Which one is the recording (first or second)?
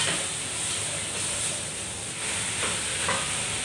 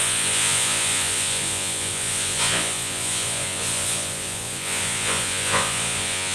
first